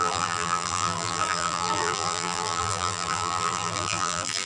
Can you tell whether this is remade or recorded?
remade